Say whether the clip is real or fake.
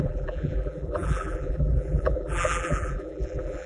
fake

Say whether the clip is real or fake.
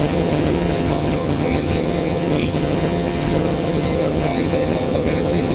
fake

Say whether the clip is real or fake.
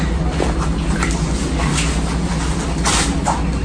real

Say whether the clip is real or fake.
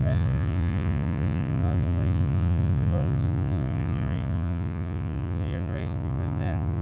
fake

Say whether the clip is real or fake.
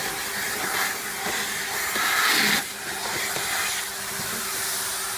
real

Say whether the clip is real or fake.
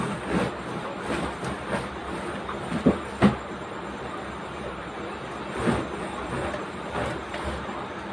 real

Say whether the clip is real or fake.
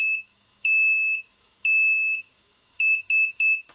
fake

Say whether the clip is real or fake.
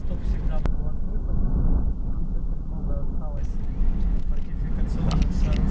real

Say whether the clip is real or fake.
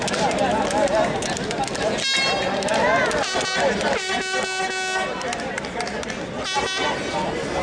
real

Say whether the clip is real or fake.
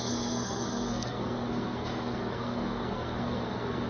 fake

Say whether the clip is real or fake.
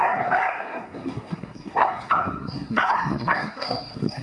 fake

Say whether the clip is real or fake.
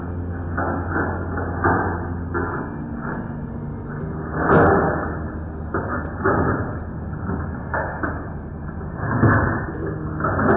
real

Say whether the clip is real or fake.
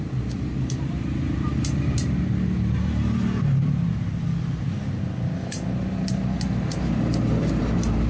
real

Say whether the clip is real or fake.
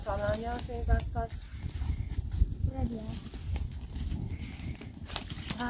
real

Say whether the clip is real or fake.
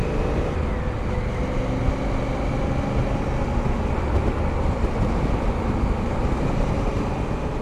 real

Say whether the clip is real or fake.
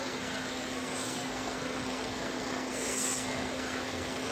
fake